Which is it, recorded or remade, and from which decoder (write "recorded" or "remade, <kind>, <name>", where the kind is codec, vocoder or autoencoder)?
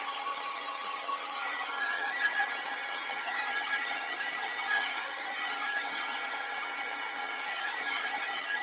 remade, vocoder, HiFi-GAN